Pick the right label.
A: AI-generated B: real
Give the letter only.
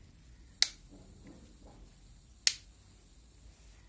B